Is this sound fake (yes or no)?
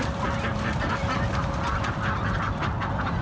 no